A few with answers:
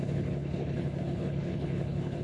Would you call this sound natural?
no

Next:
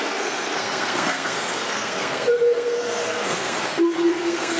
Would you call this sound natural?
no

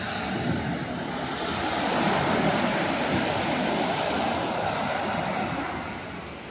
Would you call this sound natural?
yes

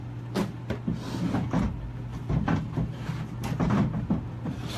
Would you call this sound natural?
yes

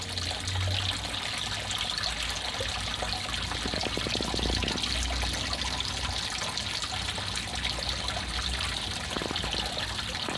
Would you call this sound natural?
yes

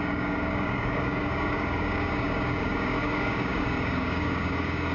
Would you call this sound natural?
no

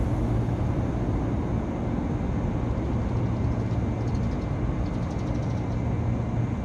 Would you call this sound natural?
yes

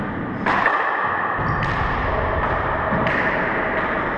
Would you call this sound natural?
yes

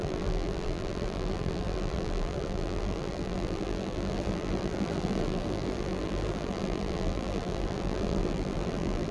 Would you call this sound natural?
no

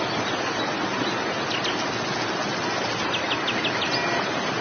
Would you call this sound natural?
yes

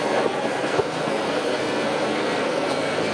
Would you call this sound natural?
no